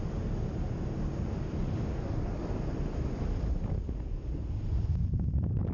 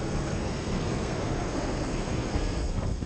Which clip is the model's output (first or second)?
second